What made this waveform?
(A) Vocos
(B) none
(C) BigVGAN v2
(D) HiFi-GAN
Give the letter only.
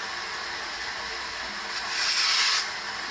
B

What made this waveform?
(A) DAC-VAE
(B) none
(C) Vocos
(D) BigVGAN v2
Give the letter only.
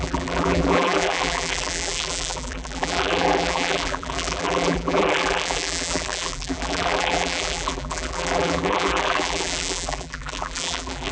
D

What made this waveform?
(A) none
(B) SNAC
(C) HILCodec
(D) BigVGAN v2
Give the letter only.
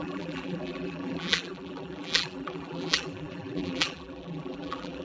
D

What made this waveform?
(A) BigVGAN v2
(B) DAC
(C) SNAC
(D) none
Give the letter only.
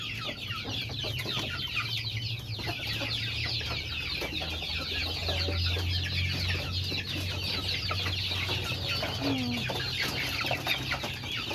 D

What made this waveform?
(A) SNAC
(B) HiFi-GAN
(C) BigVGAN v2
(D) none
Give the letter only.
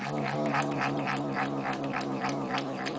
D